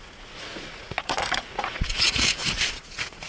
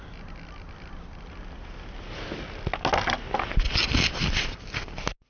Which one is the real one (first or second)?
second